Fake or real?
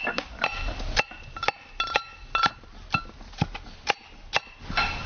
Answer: real